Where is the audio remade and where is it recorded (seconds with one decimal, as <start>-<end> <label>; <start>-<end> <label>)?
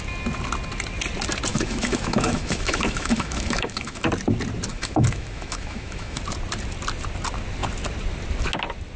0.0-1.5 recorded; 1.5-4.1 remade; 4.1-4.7 recorded; 4.7-6.2 remade; 6.2-9.0 recorded